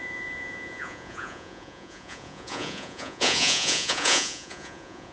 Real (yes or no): no